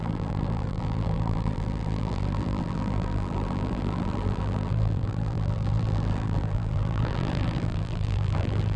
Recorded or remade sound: remade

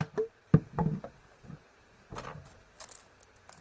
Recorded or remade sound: recorded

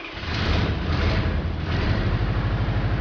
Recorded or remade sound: remade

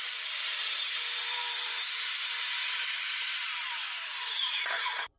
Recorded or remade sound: remade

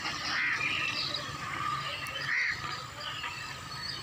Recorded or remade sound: recorded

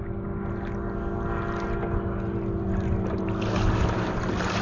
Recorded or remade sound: recorded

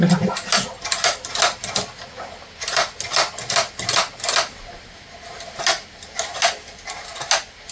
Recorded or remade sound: recorded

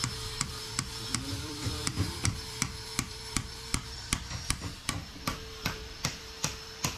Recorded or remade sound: remade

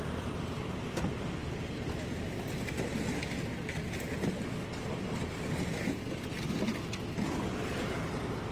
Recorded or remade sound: recorded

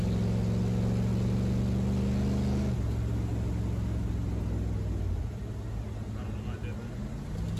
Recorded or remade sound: recorded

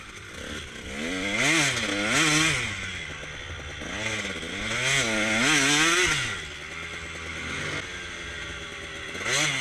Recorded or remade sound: recorded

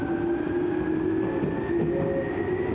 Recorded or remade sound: recorded